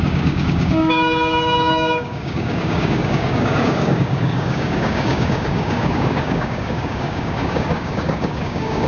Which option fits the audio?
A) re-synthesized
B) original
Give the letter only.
A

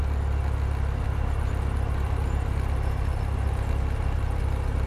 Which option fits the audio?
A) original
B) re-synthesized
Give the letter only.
A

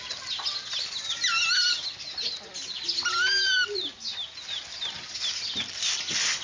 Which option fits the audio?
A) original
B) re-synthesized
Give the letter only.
A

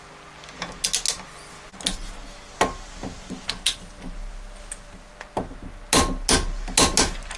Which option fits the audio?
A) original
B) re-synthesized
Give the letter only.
A